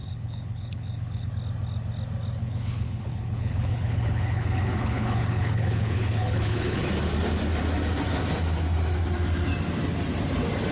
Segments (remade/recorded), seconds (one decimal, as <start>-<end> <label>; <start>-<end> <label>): 0.0-1.3 remade; 1.3-2.4 recorded; 2.4-6.9 remade; 6.9-10.7 recorded